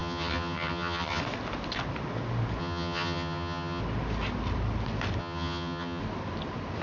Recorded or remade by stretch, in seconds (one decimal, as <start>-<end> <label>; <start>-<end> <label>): 0.0-1.2 remade; 1.2-2.6 recorded; 2.6-3.8 remade; 3.8-5.2 recorded; 5.2-6.0 remade; 6.0-6.8 recorded